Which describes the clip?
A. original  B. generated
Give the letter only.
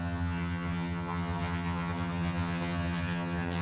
B